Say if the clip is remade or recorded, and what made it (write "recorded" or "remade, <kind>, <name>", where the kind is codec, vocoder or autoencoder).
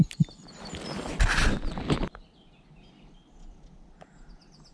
recorded